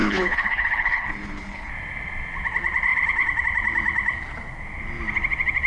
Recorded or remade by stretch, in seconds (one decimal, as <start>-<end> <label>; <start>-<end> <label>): 0.0-1.7 remade; 1.7-5.7 recorded